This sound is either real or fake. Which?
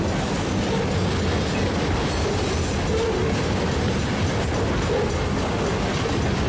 real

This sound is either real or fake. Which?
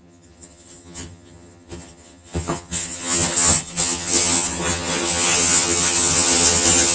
fake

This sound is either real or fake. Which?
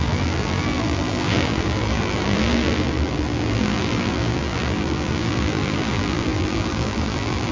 fake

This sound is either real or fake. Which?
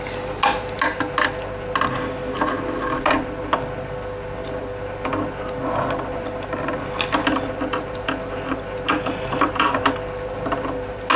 real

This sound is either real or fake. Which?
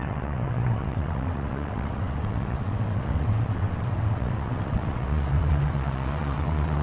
fake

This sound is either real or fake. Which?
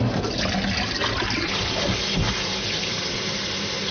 real